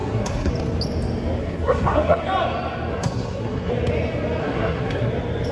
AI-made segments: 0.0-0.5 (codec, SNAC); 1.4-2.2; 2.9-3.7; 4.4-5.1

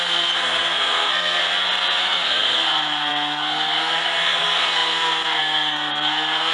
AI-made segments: 0.0-1.4 (codec, SNAC); 2.0-6.5

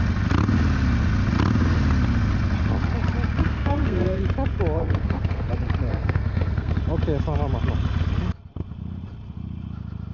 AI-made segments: 3.4-4.2 (codec, SNAC); 4.8-5.5; 5.9-6.7

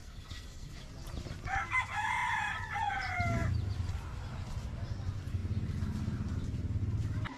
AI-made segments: 0.0-0.8 (codec, SNAC)